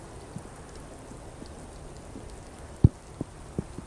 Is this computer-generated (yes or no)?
no